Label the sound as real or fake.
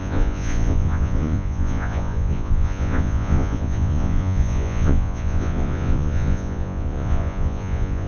fake